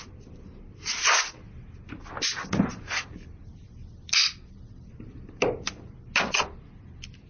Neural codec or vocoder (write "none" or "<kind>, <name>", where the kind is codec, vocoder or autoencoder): none